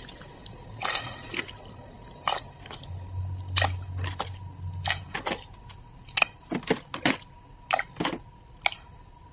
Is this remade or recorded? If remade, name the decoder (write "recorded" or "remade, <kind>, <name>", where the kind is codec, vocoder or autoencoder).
recorded